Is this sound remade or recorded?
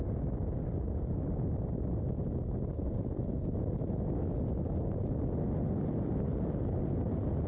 recorded